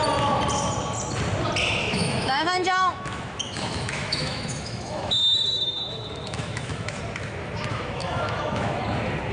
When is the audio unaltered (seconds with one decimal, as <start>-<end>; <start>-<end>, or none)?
0.0-1.8; 7.0-7.7; 8.8-9.3